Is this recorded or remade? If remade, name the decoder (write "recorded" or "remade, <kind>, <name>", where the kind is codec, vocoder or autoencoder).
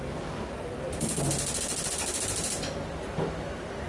recorded